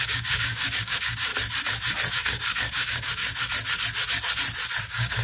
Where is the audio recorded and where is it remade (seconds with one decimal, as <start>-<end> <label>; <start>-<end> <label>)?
0.0-1.3 remade; 1.3-2.1 recorded; 2.1-3.2 remade; 3.2-4.8 recorded; 4.8-5.2 remade